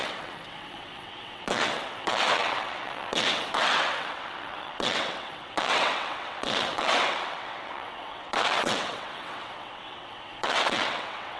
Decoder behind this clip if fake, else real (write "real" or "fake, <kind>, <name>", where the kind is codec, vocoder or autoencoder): fake, vocoder, WaveNeXt